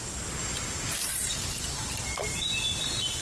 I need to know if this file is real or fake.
real